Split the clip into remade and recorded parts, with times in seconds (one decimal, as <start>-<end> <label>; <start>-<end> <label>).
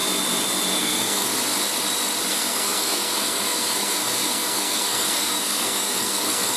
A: 0.0-0.8 recorded; 0.8-1.3 remade; 1.3-2.3 recorded; 2.3-6.6 remade